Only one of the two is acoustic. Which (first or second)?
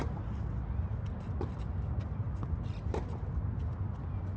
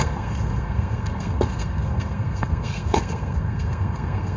first